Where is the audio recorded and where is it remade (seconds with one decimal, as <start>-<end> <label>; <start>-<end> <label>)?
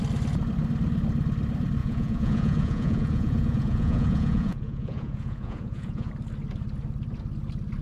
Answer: 0.0-1.8 recorded; 1.8-6.1 remade; 6.1-7.8 recorded